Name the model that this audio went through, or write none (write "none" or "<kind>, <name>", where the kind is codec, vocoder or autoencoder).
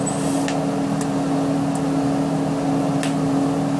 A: none